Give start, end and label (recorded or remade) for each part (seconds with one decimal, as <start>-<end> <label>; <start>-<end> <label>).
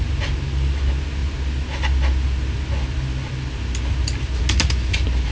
0.0-5.3 recorded